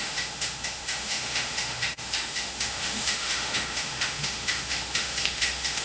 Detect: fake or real fake